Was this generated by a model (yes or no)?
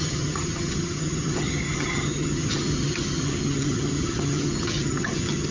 yes